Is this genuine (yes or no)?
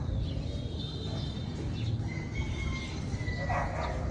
yes